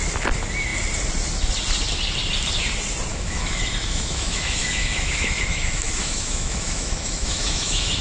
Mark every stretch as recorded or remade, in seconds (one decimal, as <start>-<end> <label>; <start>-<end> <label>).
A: 0.0-3.1 recorded; 3.1-8.0 remade